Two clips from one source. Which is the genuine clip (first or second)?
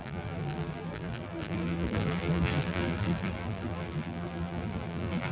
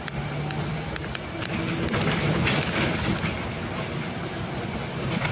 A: second